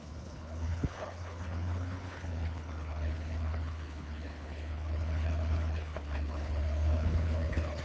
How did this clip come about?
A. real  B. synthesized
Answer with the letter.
B